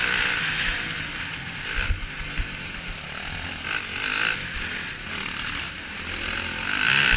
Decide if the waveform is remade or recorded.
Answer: recorded